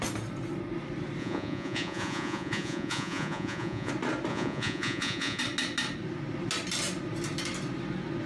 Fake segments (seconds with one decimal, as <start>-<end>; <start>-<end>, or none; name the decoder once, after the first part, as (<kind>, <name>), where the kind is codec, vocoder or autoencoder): 1.2-3.9 (vocoder, Vocos); 4.3-5.4